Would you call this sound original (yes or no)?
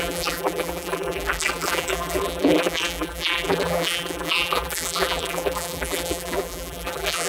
no